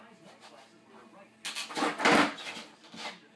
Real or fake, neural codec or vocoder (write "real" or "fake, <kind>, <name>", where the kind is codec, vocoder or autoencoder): real